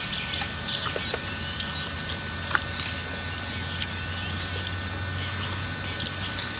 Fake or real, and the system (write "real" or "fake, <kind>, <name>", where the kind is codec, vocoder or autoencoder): real